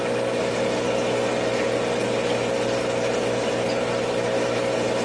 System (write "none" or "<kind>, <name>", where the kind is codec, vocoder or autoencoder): none